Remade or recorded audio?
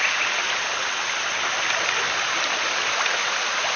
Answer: recorded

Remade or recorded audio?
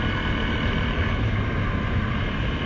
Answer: recorded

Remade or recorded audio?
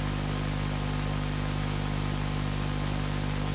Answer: recorded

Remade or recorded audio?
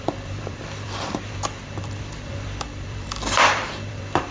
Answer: remade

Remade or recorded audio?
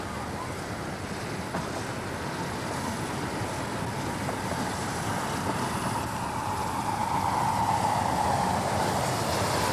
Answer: recorded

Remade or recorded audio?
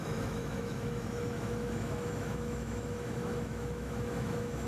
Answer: remade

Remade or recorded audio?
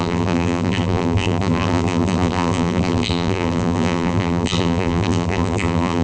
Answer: remade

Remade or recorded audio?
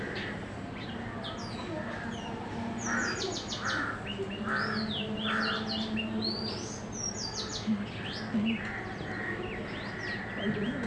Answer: recorded